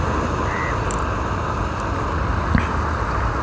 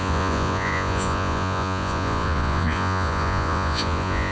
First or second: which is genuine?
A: first